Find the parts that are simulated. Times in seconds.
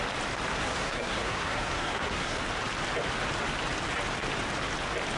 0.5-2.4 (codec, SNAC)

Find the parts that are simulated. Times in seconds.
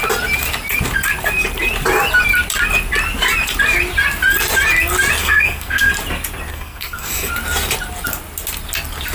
5.2-5.9 (codec, SNAC); 6.5-7.3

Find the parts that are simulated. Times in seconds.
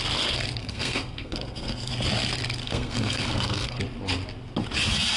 0.6-1.9 (codec, SNAC); 2.6-3.8